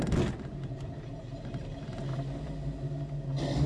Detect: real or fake real